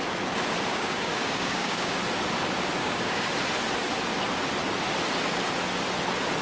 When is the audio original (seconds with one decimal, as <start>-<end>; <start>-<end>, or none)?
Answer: 0.0-0.7; 2.0-2.8; 3.3-6.4